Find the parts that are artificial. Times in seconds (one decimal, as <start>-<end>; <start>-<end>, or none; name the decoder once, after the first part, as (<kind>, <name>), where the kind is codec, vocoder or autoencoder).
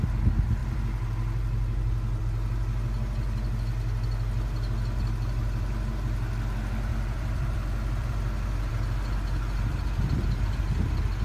6.9-8.7 (vocoder, BigVGAN v2)